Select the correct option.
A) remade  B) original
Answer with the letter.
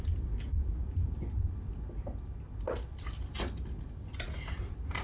B